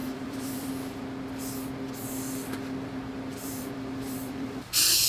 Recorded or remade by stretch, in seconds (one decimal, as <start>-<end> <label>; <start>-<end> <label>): 0.0-0.7 remade; 0.7-3.3 recorded; 3.3-4.6 remade; 4.6-5.1 recorded